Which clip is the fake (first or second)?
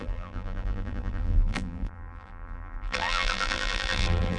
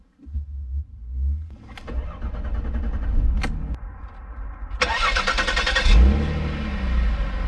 first